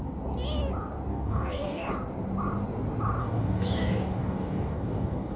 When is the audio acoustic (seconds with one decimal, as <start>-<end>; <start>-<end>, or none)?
0.0-1.1; 1.9-3.2